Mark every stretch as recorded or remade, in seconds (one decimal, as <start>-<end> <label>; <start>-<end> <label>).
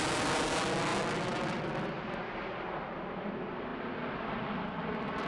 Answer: 0.0-5.3 recorded